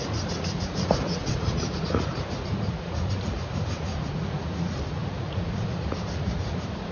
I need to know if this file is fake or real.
fake